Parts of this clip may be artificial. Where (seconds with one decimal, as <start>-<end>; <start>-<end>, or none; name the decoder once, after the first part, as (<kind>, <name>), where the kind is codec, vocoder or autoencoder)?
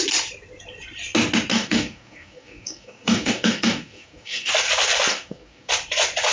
1.5-4.5 (codec, DAC); 5.1-5.7